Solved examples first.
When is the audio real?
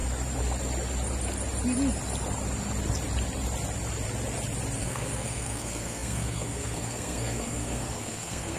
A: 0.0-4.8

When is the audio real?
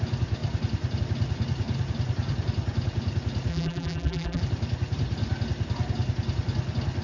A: 0.0-3.5; 4.4-7.0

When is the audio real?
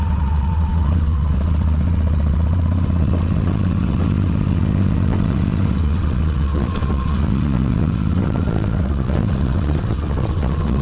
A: none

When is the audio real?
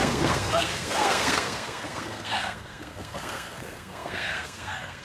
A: none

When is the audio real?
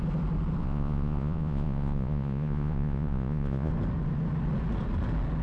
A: 0.0-0.6; 3.7-5.4